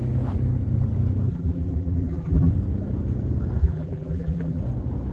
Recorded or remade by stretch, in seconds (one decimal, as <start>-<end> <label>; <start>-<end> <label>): 0.0-1.3 recorded; 1.3-2.5 remade; 2.5-3.6 recorded; 3.6-4.6 remade; 4.6-5.1 recorded